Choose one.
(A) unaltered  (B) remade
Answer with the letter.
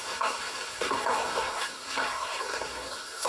B